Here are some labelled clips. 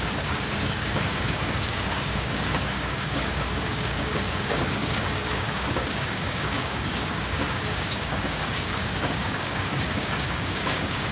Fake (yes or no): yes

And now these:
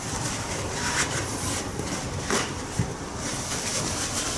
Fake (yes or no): yes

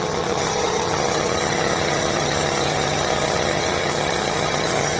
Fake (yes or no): yes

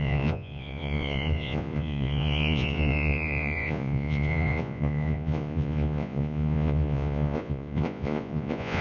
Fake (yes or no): yes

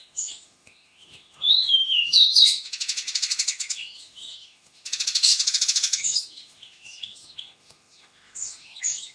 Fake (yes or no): yes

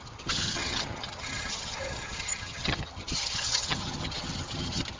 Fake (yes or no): yes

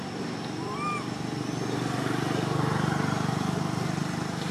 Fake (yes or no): no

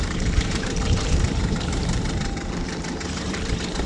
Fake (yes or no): yes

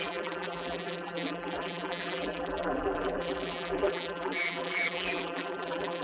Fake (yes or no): yes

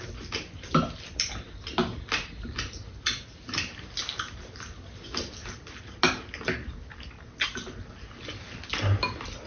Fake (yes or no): no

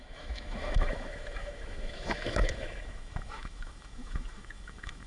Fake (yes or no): yes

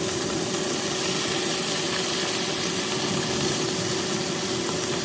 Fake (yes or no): no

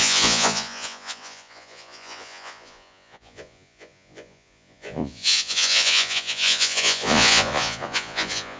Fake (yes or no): yes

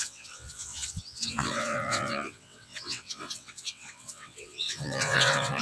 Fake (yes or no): yes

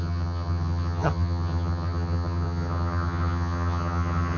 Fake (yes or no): yes